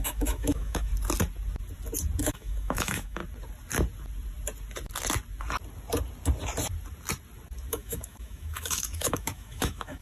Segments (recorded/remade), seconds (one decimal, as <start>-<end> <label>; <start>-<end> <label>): 0.0-0.9 remade; 0.9-2.2 recorded; 2.2-3.2 remade; 3.2-7.7 recorded; 7.7-10.0 remade